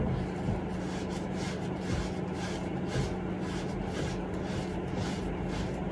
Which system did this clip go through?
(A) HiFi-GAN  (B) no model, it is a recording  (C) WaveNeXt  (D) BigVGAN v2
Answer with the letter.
B